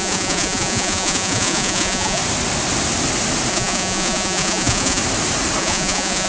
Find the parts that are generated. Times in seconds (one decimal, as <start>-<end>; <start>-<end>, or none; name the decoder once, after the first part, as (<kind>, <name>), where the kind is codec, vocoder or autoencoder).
0.0-2.2 (vocoder, Vocos); 3.5-5.0; 5.6-6.3